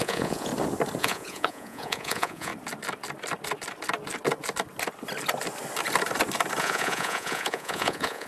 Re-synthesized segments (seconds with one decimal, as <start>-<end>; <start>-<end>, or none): 0.0-0.5; 1.0-2.5; 6.6-8.3